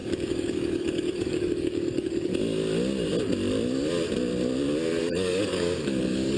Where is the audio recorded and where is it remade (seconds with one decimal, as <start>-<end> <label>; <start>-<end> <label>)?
0.0-2.3 remade; 2.3-5.0 recorded; 5.0-6.4 remade